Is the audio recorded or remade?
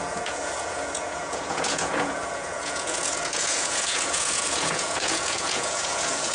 remade